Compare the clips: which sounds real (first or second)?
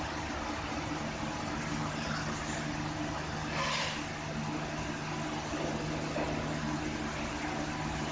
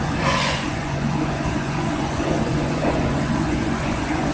first